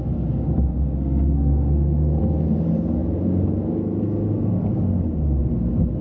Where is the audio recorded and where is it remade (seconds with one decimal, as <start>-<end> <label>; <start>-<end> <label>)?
0.0-0.7 recorded; 0.7-2.2 remade; 2.2-6.0 recorded